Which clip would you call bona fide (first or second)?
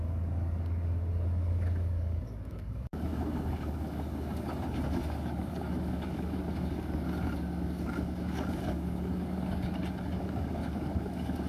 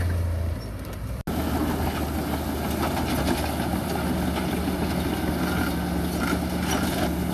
second